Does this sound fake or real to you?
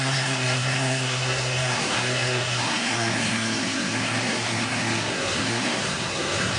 fake